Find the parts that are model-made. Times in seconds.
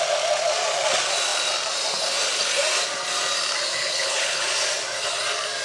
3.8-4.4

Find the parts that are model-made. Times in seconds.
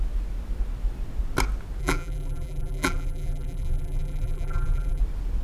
1.8-5.0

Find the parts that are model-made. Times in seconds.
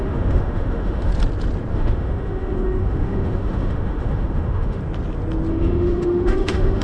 0.0-1.1; 1.7-4.8; 5.5-6.8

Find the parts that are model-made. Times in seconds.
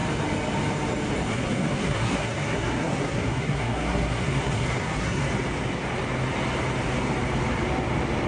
1.3-5.2